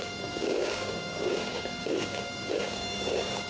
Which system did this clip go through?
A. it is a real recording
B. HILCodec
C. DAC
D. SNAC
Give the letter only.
C